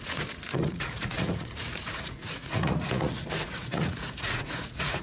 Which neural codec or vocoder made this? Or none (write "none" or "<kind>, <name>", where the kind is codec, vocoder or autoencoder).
vocoder, Vocos